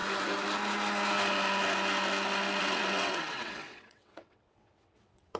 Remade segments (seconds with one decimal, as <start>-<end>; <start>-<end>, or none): 2.6-5.4